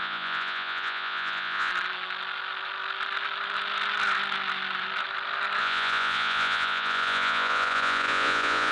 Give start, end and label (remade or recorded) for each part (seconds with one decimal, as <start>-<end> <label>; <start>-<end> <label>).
0.0-1.7 remade; 1.7-5.6 recorded; 5.6-8.7 remade